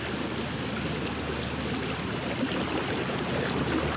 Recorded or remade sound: recorded